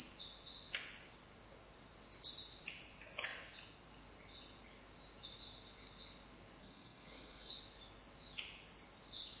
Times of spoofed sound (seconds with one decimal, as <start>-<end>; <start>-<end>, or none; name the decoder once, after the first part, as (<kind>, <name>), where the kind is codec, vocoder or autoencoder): 6.6-7.5 (codec, SNAC)